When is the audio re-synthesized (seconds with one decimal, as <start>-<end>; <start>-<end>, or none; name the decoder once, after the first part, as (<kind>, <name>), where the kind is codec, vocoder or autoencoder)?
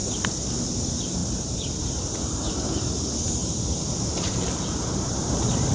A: 1.2-2.2 (vocoder, BigVGAN v2); 3.4-5.7